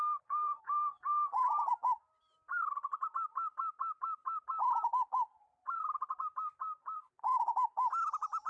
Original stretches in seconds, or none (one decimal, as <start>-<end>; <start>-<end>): 1.7-4.2; 7.6-8.5